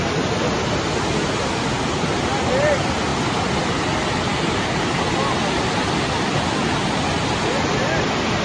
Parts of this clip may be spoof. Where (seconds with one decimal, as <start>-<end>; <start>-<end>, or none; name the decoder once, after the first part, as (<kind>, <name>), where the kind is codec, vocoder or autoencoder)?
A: none